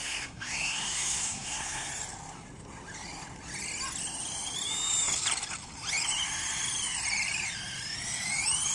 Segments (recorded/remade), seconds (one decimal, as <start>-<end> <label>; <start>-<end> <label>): 0.0-1.9 remade; 1.9-8.7 recorded